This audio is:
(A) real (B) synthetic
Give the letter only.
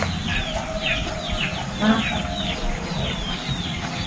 A